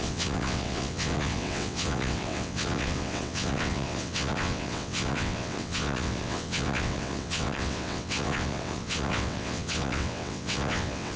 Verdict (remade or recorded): remade